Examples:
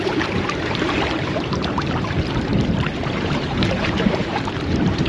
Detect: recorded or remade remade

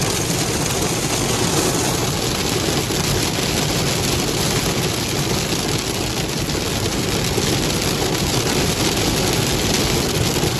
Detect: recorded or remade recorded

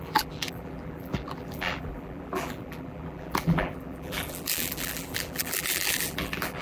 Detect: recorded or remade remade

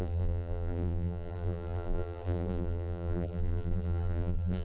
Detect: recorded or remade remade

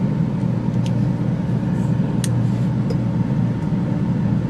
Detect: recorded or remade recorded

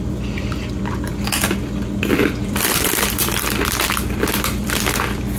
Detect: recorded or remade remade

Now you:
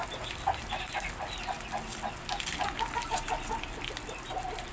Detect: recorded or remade recorded